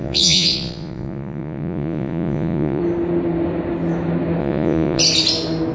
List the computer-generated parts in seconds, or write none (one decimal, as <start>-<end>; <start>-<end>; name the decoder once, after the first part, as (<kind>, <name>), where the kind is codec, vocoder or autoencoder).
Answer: 0.0-2.8 (vocoder, Vocos); 4.4-5.0